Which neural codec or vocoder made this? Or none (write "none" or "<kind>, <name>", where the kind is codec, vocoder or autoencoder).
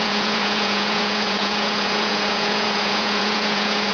vocoder, Vocos